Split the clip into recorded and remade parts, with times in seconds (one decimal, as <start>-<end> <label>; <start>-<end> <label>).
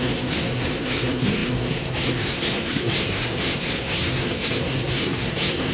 0.0-5.7 remade